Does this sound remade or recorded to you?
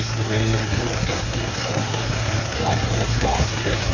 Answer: remade